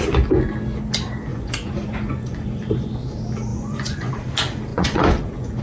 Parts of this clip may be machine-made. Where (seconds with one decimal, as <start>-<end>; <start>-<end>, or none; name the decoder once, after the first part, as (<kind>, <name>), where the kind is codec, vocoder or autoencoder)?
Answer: 1.3-2.6 (vocoder, Vocos); 3.5-4.1; 4.7-5.6